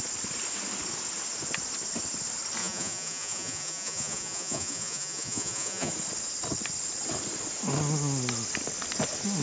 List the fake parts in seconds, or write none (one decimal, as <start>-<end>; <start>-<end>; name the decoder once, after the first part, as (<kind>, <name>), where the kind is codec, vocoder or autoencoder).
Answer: 2.6-5.9 (vocoder, Vocos)